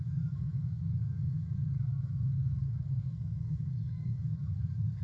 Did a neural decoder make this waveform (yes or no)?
yes